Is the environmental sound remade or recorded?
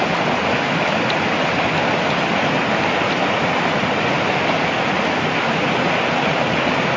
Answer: recorded